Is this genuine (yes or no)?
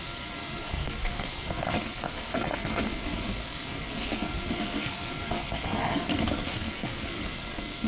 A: no